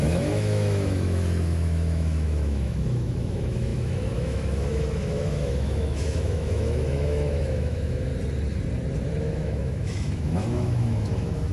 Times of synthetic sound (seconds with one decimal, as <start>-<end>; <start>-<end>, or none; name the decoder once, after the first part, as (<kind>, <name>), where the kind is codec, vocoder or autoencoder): 0.0-8.1 (autoencoder, DAC-VAE); 9.2-11.5